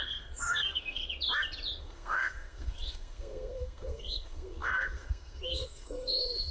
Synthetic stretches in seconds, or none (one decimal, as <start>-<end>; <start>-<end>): 0.0-1.0; 1.8-6.5